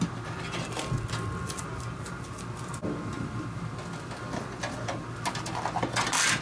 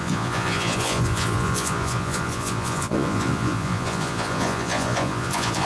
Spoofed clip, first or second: second